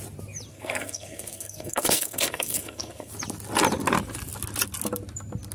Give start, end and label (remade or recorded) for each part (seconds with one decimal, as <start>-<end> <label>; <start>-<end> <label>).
0.0-0.5 recorded; 0.5-3.1 remade; 3.1-5.5 recorded